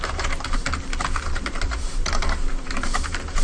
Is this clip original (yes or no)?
no